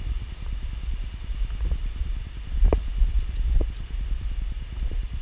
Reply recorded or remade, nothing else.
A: recorded